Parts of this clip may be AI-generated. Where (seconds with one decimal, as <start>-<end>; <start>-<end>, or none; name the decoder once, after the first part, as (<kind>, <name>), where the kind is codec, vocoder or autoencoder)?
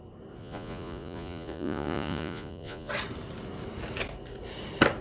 0.4-2.9 (vocoder, Vocos)